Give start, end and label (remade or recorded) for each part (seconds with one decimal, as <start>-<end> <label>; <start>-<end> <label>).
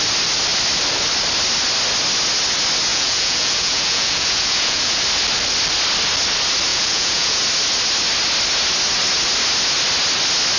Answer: 0.0-2.9 recorded; 2.9-5.0 remade; 5.0-6.7 recorded; 6.7-7.4 remade; 7.4-10.6 recorded